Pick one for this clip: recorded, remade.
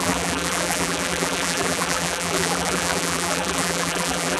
remade